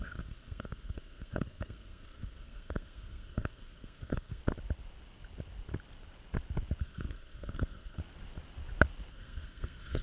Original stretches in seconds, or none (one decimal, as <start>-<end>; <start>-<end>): 4.4-6.8; 8.0-9.1